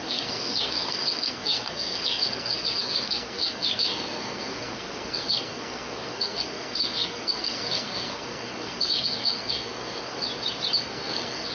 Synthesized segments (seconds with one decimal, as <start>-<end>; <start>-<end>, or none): 0.0-10.2; 10.8-11.5